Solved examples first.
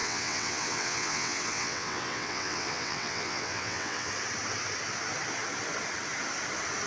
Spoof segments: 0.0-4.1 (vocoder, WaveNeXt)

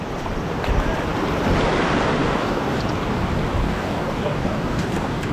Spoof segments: 2.2-2.8 (codec, DAC); 3.6-5.3